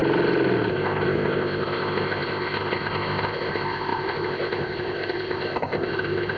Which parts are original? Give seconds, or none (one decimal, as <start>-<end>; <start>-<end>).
0.0-0.7

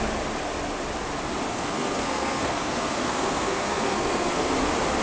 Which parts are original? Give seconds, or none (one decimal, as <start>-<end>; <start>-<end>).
0.0-1.5; 4.5-5.0